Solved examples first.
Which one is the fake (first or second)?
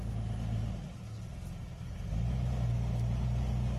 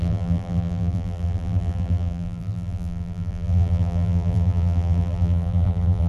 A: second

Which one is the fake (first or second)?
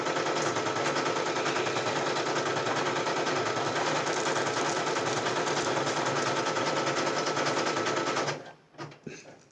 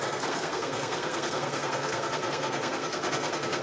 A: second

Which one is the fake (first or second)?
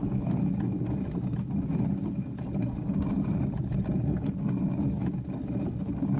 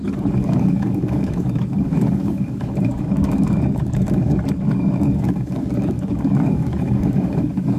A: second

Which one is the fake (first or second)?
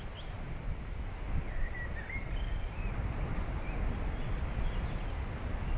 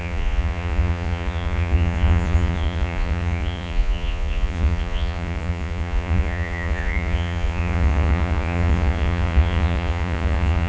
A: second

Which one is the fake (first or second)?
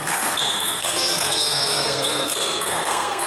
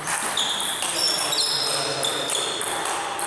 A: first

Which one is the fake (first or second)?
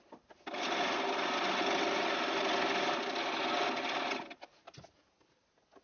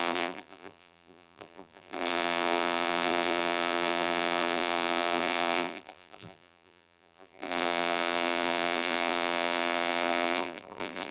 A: second